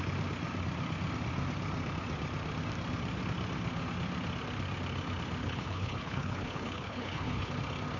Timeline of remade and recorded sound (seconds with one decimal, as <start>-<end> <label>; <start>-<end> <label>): 0.0-5.4 recorded; 5.4-7.5 remade; 7.5-8.0 recorded